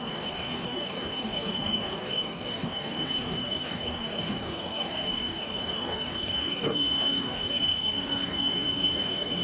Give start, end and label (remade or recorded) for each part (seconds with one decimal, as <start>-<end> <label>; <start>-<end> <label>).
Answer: 0.0-9.4 remade